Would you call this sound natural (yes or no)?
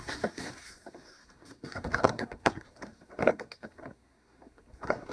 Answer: no